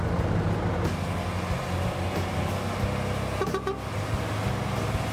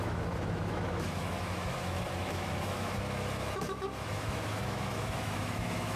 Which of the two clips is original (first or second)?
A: first